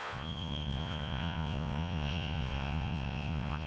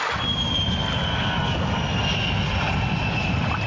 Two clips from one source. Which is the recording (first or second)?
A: second